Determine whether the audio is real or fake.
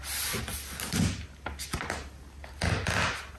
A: real